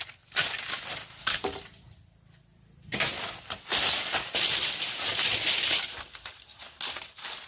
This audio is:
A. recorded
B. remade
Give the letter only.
A